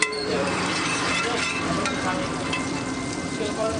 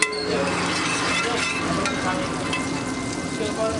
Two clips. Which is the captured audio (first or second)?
second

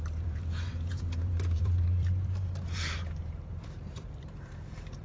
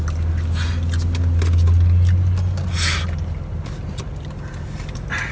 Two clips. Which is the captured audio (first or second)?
second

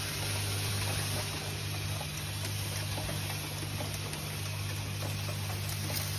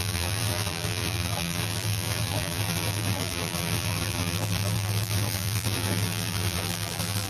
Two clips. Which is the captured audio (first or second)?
first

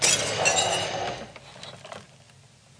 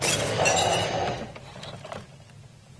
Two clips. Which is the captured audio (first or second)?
first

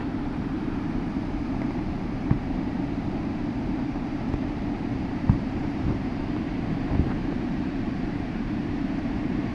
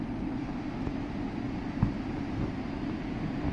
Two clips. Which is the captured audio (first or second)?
second